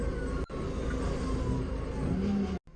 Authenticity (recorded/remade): recorded